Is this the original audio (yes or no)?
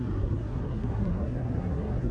no